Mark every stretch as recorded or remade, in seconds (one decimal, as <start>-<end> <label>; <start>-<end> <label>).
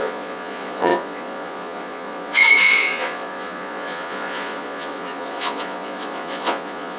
0.0-7.0 remade